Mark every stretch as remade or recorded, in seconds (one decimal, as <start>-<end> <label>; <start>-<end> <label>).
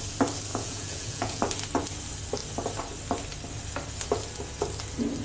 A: 0.0-0.5 recorded; 0.5-1.4 remade; 1.4-5.2 recorded